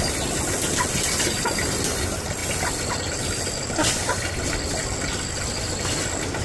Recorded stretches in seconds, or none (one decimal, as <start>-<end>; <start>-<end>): 0.0-6.4